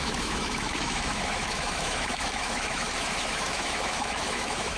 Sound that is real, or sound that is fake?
fake